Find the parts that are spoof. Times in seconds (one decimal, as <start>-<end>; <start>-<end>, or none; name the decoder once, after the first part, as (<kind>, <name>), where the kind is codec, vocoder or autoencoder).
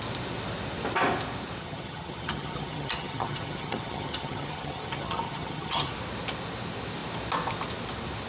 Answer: 1.6-5.9 (vocoder, HiFi-GAN)